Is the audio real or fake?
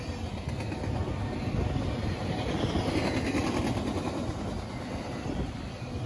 real